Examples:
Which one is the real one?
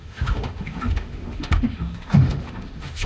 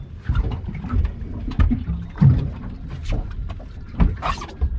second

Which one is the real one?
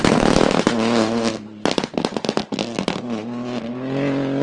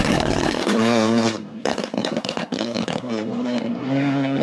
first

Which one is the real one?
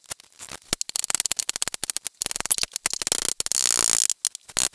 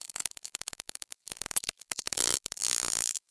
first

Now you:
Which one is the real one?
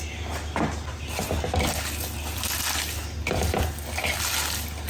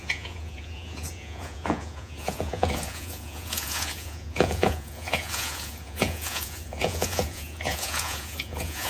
first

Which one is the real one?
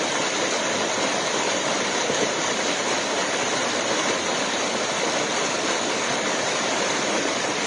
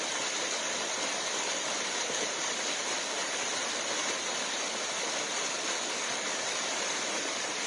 second